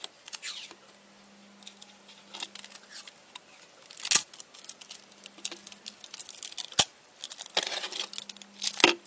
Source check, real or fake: real